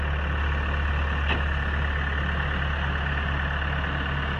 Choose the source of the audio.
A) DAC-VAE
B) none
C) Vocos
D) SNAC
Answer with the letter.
B